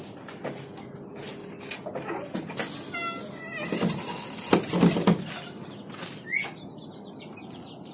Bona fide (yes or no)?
yes